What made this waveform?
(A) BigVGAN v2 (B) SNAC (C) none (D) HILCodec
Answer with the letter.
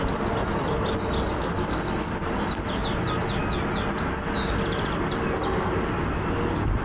C